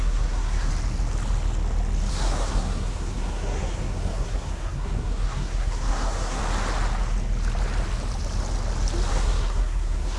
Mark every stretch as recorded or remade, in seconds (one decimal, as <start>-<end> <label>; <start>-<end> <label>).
0.0-0.7 remade; 0.7-2.1 recorded; 2.1-6.4 remade; 6.4-9.1 recorded; 9.1-10.2 remade